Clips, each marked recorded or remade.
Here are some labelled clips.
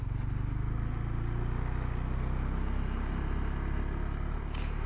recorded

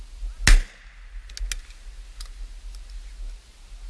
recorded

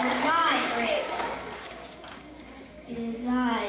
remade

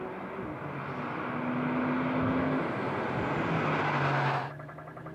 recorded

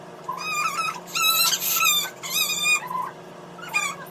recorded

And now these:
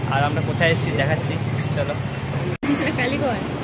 recorded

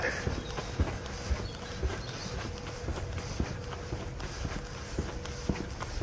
recorded